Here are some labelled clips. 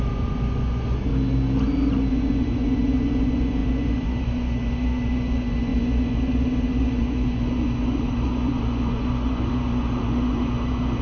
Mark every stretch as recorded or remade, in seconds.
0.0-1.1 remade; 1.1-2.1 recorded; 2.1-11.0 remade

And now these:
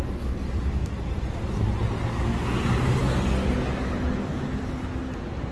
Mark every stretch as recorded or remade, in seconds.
0.0-5.5 recorded

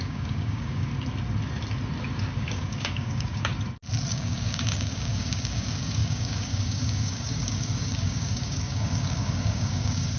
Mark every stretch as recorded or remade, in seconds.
0.0-0.9 remade; 0.9-2.4 recorded; 2.4-3.5 remade; 3.5-4.1 recorded; 4.1-10.2 remade